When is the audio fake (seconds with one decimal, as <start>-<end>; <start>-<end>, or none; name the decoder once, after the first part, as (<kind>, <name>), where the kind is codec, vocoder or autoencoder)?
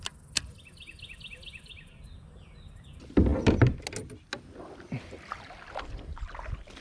none